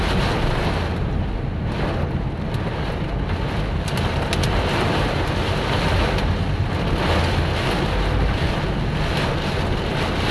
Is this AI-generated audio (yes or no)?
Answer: no